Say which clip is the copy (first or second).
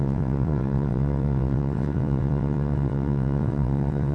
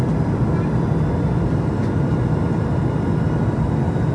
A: first